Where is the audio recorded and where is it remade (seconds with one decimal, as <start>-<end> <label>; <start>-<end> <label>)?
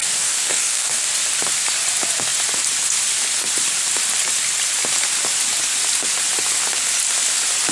0.0-1.1 remade; 1.1-7.7 recorded